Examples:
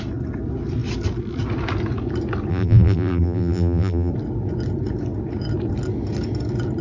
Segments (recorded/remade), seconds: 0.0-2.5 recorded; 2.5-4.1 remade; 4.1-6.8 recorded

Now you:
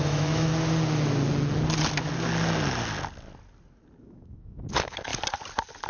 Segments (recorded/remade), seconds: 0.0-0.5 remade; 0.5-4.0 recorded; 4.0-5.1 remade; 5.1-5.9 recorded

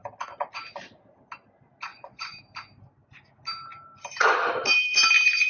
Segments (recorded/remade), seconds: 0.0-1.9 recorded; 1.9-2.4 remade; 2.4-5.5 recorded